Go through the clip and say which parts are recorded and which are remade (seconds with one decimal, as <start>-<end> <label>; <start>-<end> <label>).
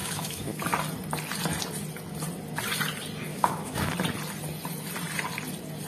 0.0-0.6 remade; 0.6-3.3 recorded; 3.3-3.9 remade; 3.9-5.9 recorded